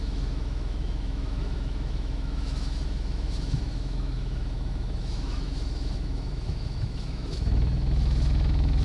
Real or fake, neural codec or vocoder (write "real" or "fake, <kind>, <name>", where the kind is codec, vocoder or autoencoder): fake, autoencoder, DAC-VAE